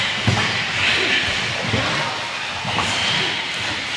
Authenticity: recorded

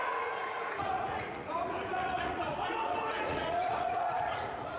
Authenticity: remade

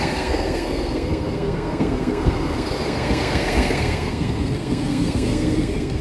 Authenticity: remade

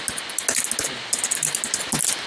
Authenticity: recorded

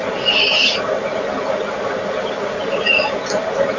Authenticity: recorded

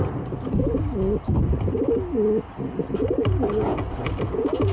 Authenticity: recorded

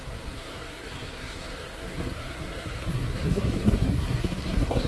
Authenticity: remade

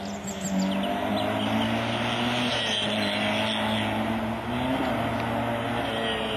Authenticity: recorded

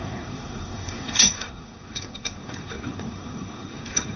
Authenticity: remade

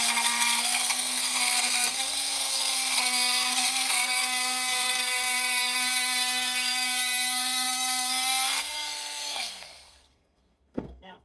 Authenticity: remade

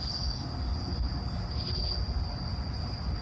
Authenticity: recorded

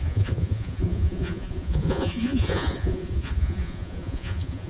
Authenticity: remade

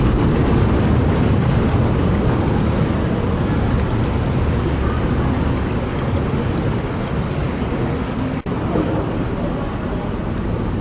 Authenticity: recorded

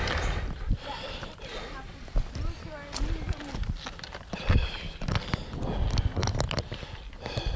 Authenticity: recorded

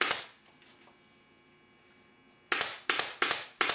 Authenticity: recorded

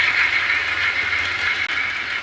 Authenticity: recorded